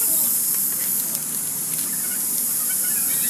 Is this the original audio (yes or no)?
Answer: yes